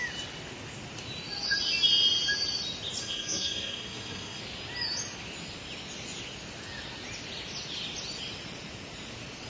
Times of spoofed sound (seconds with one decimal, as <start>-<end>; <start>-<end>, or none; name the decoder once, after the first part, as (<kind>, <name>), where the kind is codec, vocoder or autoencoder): 3.0-4.4 (codec, SNAC)